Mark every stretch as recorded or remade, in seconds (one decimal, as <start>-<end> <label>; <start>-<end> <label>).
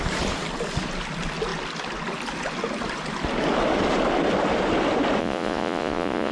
0.0-5.2 recorded; 5.2-6.3 remade